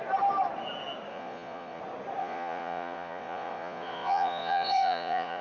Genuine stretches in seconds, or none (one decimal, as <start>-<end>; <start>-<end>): 0.0-1.1; 1.8-2.2